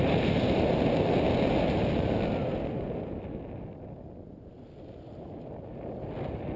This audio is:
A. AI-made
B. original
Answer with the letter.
B